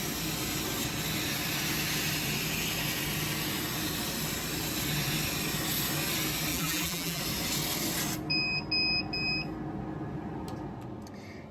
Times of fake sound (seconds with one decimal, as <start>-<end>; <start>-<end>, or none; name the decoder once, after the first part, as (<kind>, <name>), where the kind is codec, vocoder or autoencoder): 6.5-7.2 (vocoder, BigVGAN v2)